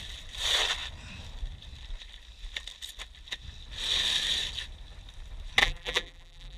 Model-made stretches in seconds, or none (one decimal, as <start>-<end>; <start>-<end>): 5.6-6.6